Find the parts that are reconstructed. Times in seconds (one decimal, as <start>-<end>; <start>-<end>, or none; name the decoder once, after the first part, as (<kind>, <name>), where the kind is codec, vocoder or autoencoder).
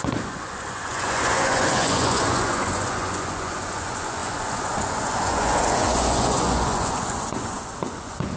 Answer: 0.0-8.4 (vocoder, Vocos)